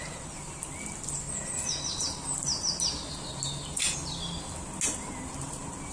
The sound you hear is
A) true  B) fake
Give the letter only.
A